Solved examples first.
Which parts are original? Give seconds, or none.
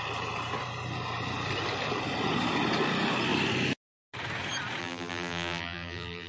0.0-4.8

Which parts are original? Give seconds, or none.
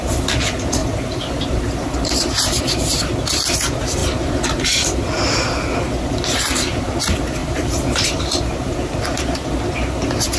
0.0-0.8; 2.9-7.4; 8.5-10.4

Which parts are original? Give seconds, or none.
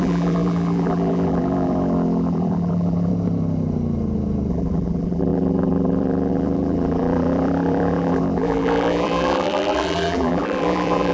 3.1-4.5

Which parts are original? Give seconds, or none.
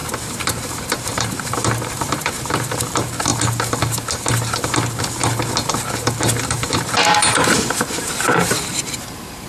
3.3-4.3; 5.2-6.5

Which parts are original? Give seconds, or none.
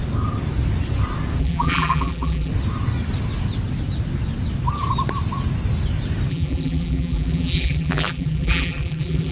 0.0-1.4; 2.5-6.3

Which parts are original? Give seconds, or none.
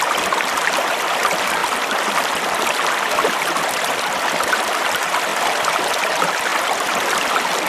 0.0-1.6; 2.2-7.7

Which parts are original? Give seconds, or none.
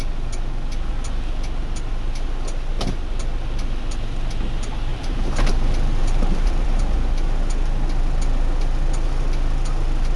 0.0-4.9; 5.5-6.0; 6.8-10.2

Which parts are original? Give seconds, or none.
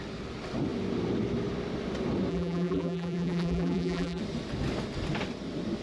0.0-2.3; 4.2-5.8